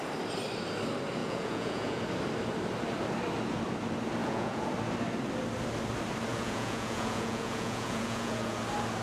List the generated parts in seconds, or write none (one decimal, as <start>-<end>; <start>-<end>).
1.2-2.0; 4.2-4.7; 6.3-8.6